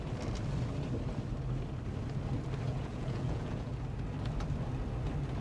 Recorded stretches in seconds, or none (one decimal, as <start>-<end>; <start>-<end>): 0.0-2.7; 3.7-5.4